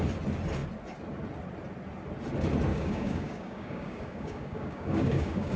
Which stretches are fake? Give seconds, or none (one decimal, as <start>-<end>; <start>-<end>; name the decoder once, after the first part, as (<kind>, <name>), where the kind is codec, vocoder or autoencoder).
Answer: 2.7-5.6 (codec, DAC)